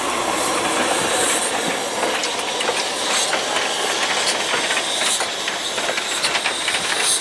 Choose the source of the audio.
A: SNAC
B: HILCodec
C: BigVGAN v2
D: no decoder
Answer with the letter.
D